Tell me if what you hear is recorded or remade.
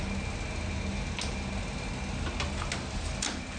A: recorded